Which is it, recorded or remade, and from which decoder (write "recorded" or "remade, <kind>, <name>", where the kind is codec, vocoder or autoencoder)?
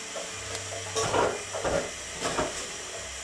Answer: recorded